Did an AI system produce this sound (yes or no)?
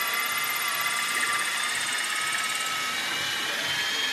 no